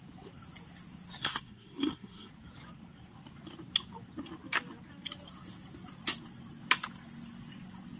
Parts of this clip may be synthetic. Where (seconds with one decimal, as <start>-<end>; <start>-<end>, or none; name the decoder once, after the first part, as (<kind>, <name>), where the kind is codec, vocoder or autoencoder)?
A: 1.2-2.3 (codec, SNAC)